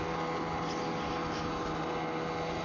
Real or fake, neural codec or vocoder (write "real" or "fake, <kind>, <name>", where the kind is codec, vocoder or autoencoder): real